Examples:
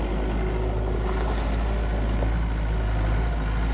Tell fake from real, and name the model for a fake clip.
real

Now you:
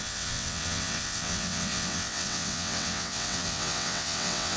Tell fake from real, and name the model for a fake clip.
fake, vocoder, WaveNeXt